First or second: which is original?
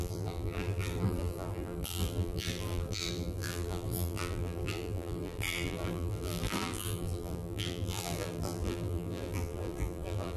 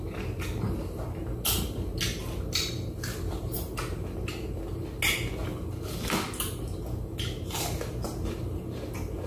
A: second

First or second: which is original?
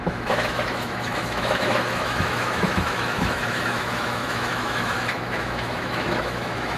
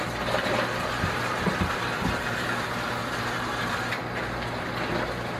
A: second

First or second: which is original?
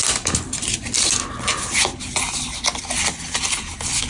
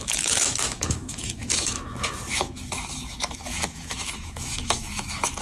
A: first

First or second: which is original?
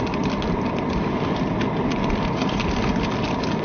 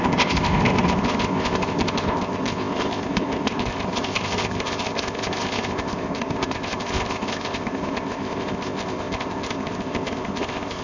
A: first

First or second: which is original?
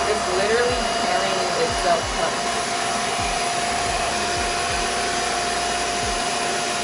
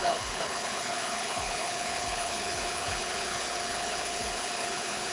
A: first